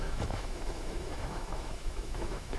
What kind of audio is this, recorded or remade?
remade